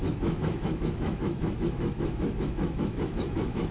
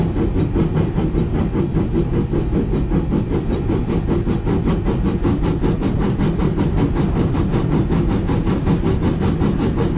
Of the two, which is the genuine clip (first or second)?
second